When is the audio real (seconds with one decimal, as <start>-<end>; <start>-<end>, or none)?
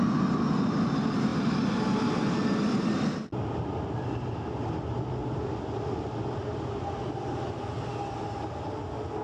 0.0-9.2